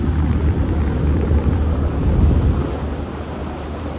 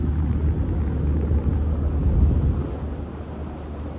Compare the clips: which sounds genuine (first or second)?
second